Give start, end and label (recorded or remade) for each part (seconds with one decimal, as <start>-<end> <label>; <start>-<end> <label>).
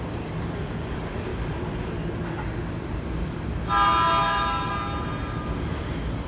0.0-6.3 recorded